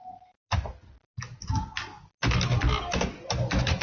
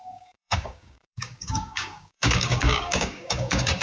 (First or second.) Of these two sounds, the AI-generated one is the second